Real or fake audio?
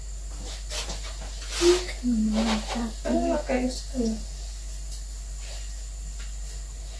real